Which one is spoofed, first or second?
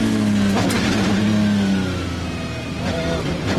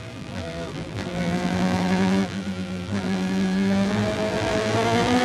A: second